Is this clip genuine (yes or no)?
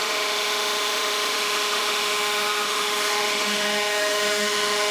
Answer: no